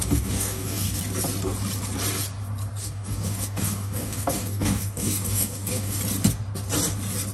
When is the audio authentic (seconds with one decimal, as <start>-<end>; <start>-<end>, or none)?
1.0-2.8; 6.0-7.3